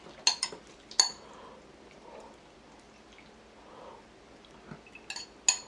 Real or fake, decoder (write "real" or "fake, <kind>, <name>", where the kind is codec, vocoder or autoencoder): real